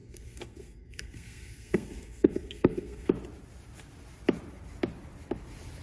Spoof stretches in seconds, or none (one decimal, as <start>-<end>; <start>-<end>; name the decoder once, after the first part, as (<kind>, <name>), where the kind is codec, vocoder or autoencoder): 0.0-3.1 (codec, SNAC)